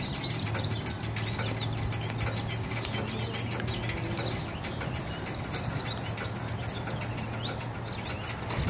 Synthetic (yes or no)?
no